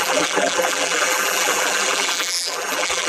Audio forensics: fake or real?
fake